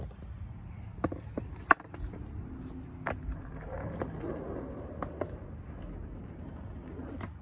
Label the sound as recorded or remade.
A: recorded